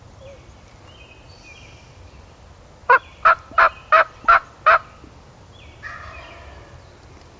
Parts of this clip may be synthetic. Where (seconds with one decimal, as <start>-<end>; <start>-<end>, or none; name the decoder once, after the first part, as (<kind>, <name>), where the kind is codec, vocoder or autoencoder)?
none